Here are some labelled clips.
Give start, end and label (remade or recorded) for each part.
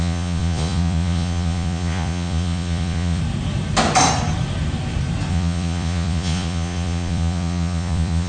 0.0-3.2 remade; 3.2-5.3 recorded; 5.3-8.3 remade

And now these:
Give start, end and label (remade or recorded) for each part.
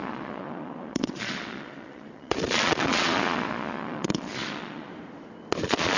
0.0-4.9 remade; 4.9-5.6 recorded; 5.6-6.0 remade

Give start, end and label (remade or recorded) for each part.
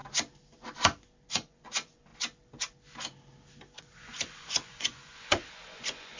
0.0-1.3 recorded; 1.3-2.1 remade; 2.1-3.8 recorded; 3.8-6.2 remade